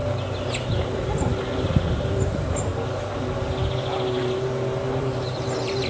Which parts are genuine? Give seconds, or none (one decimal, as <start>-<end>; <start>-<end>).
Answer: 0.0-1.9; 2.7-5.0